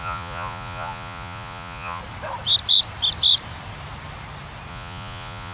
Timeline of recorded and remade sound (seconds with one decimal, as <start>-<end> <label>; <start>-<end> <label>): 0.0-2.0 remade; 2.0-4.7 recorded; 4.7-5.5 remade